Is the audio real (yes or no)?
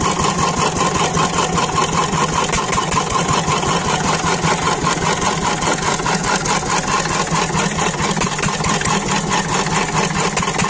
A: yes